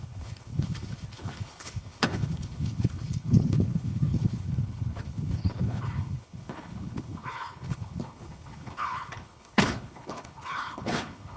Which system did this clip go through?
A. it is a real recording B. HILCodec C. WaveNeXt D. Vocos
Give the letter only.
B